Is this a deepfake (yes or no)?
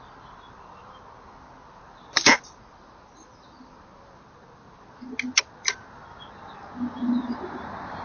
no